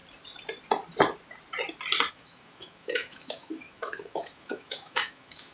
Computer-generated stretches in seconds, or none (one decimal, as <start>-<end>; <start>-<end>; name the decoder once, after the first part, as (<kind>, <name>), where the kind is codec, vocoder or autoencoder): 2.1-5.5 (autoencoder, DAC-VAE)